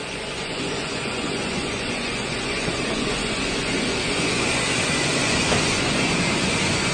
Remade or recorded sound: remade